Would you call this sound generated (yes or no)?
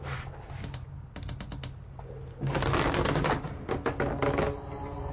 no